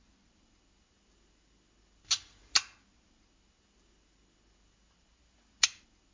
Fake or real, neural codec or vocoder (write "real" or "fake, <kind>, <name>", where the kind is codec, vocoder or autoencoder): real